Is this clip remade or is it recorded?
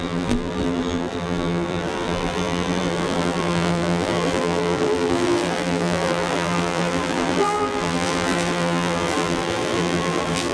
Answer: remade